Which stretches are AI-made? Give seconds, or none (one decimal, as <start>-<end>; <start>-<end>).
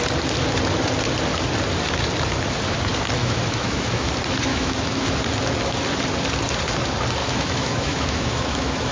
3.2-4.1; 4.5-5.1; 7.2-8.9